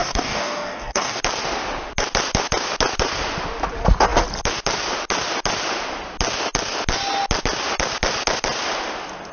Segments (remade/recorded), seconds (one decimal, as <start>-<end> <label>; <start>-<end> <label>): 0.0-1.2 remade; 1.2-9.3 recorded